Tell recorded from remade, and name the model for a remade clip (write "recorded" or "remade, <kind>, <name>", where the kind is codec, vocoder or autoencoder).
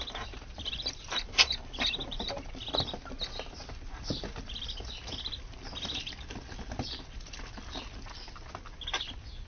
remade, vocoder, BigVGAN v2